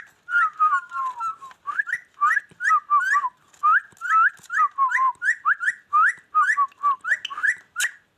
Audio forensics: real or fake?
real